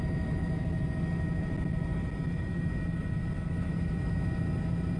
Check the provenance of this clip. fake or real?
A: real